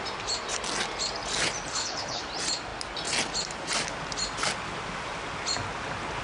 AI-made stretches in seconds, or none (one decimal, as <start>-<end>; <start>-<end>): 1.7-2.2